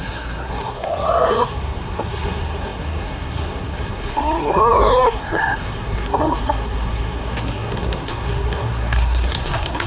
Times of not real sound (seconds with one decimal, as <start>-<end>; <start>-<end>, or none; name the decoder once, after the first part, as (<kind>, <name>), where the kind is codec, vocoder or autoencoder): 0.0-9.9 (codec, SNAC)